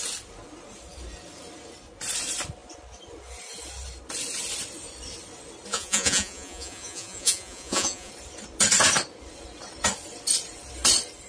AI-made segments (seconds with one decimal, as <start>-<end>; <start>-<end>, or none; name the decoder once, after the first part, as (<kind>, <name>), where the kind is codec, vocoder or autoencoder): 5.7-8.1 (vocoder, Vocos)